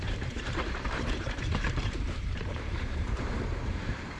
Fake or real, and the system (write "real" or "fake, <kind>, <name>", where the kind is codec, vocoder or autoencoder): fake, vocoder, BigVGAN v2